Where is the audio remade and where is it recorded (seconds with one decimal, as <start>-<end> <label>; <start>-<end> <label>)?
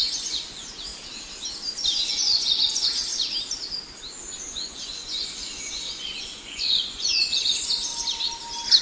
0.0-0.9 remade; 0.9-1.9 recorded; 1.9-3.1 remade; 3.1-4.4 recorded; 4.4-7.9 remade; 7.9-8.8 recorded